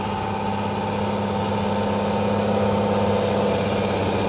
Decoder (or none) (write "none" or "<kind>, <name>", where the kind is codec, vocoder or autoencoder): none